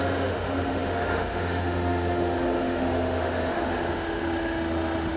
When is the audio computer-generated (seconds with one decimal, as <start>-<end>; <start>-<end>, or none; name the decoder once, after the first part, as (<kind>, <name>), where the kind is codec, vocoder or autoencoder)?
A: 0.0-5.2 (autoencoder, DAC-VAE)